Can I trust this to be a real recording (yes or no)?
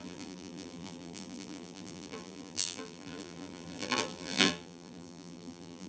no